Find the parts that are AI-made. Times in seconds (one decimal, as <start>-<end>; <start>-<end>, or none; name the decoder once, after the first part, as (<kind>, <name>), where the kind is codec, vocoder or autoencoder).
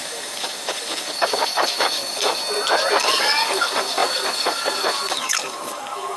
0.0-2.4 (codec, DAC); 3.0-6.2